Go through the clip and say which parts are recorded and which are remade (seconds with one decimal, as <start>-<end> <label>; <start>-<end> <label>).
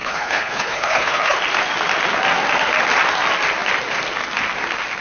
0.0-1.4 remade; 1.4-5.0 recorded